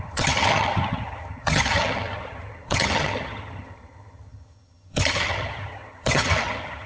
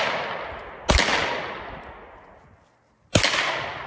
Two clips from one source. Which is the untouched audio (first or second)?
second